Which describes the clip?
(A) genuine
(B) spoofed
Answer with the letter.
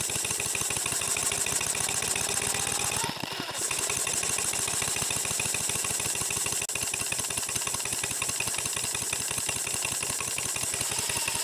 A